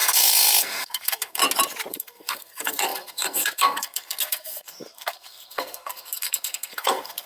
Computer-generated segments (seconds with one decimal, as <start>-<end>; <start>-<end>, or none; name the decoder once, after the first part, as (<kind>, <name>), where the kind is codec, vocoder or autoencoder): 0.0-1.4 (codec, SNAC); 1.9-7.3